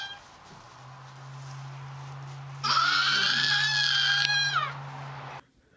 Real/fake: real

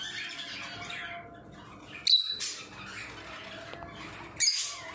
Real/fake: real